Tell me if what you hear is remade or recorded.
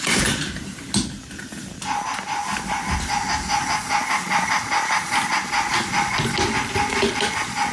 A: recorded